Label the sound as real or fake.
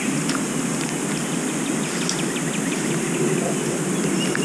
real